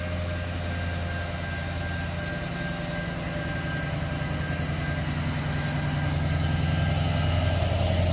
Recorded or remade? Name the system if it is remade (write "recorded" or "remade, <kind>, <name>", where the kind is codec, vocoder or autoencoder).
recorded